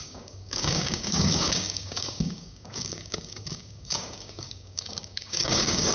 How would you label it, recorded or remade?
remade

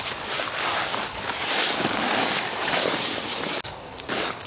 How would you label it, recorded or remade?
remade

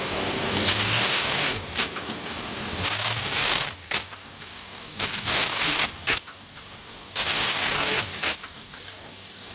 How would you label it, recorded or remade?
remade